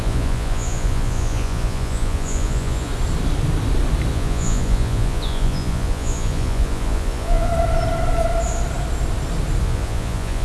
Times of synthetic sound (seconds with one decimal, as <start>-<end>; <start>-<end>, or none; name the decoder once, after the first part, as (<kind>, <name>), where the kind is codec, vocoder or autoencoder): 0.0-2.9 (vocoder, Vocos); 4.1-7.5; 9.6-10.4